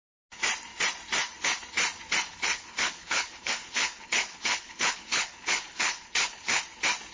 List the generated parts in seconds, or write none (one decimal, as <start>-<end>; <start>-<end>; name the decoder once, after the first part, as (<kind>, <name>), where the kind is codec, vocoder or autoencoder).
2.3-6.6 (codec, HILCodec)